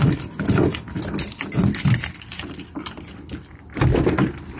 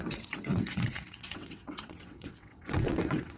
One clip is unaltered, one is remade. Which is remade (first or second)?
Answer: second